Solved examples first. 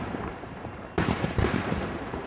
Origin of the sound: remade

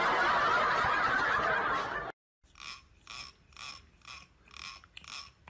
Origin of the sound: recorded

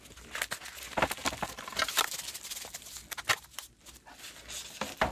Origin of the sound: recorded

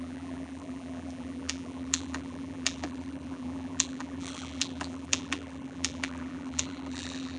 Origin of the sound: remade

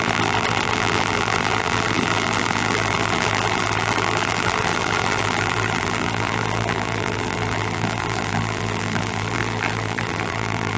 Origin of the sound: remade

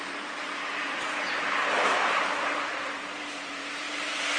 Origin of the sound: remade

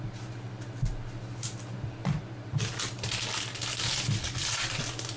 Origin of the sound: recorded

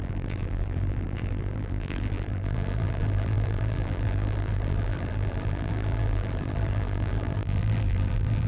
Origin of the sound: remade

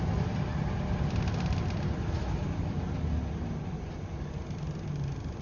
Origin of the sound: recorded